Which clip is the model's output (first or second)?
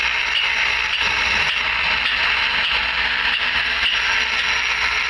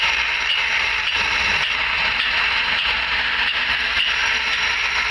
second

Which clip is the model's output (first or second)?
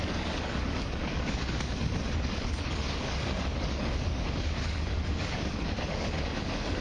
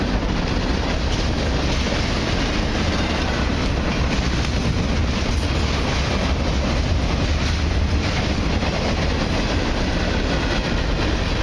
first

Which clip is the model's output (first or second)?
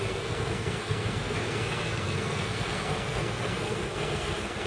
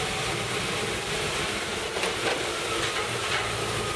first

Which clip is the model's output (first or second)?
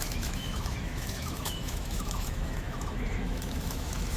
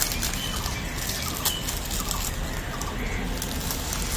first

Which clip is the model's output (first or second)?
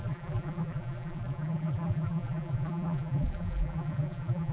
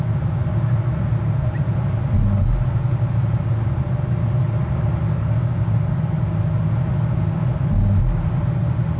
first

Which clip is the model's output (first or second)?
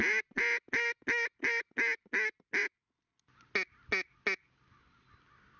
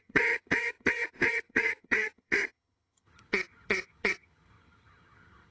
second